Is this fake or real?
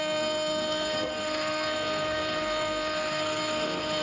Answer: fake